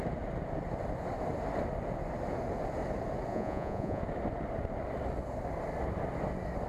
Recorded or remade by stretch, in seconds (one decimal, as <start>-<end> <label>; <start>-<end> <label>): 0.0-3.3 recorded; 3.3-4.0 remade; 4.0-6.7 recorded